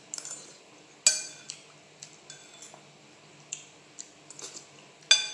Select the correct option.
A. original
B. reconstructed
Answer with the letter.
A